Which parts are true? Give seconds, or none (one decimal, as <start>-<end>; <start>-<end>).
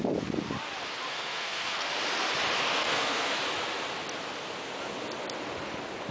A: 0.0-1.1; 1.9-2.7; 3.4-6.1